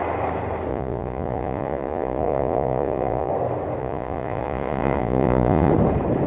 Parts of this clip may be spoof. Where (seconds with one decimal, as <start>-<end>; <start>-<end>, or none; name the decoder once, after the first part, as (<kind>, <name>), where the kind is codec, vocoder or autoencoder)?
0.7-3.3 (vocoder, Vocos); 3.8-5.7